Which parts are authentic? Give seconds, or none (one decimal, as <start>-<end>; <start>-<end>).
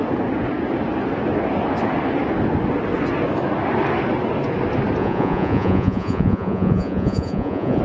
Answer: 0.0-5.0